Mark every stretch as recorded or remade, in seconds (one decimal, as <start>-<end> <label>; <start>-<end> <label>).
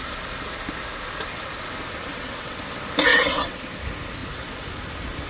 0.0-2.1 recorded; 2.1-2.6 remade; 2.6-3.1 recorded; 3.1-3.6 remade; 3.6-5.3 recorded